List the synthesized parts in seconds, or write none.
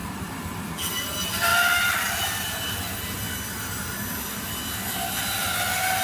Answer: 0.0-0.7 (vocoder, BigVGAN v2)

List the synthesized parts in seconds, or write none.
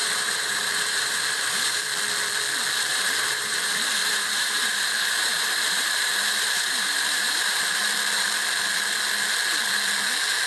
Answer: 0.0-1.9 (vocoder, BigVGAN v2); 2.9-7.8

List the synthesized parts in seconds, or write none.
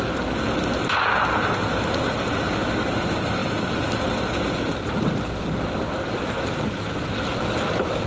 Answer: none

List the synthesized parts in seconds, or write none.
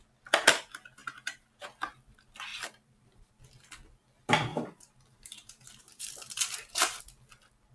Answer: 1.0-1.5 (vocoder, BigVGAN v2); 2.5-3.4; 4.5-7.0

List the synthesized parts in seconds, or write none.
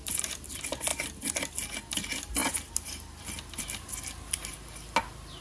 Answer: none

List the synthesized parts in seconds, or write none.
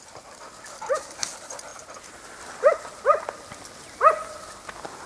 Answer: none